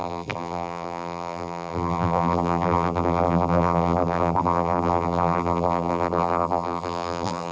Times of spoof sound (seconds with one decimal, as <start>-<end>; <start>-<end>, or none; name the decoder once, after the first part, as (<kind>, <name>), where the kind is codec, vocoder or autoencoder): 0.0-7.5 (vocoder, BigVGAN v2)